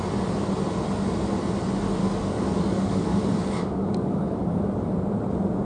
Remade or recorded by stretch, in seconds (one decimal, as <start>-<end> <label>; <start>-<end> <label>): 0.0-2.0 recorded; 2.0-4.6 remade; 4.6-5.6 recorded